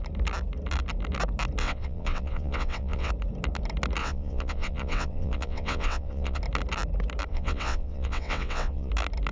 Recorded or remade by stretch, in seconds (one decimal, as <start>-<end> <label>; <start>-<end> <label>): 0.0-1.6 recorded; 1.6-3.1 remade; 3.1-4.0 recorded; 4.0-6.4 remade; 6.4-7.3 recorded; 7.3-8.9 remade; 8.9-9.3 recorded